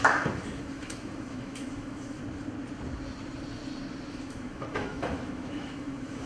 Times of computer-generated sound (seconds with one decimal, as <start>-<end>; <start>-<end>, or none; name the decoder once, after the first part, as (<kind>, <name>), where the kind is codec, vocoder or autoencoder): 0.0-2.2 (autoencoder, DAC-VAE); 4.1-6.3